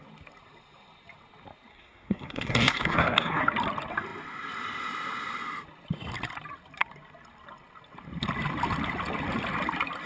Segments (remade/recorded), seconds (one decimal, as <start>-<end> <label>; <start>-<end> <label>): 0.0-1.7 recorded; 1.7-3.4 remade; 3.4-10.1 recorded